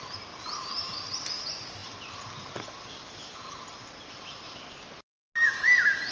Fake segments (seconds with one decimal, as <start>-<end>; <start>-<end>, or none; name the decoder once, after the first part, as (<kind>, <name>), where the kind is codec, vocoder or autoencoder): none

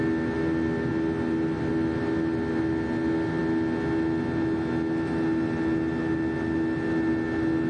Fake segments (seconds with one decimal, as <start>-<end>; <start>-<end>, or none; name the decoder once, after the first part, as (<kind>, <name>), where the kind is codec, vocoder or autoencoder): none

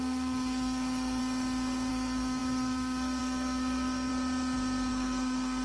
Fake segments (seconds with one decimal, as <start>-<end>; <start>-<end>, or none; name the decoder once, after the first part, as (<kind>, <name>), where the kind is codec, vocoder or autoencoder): 0.0-1.2 (codec, SNAC); 1.9-4.1; 4.9-5.6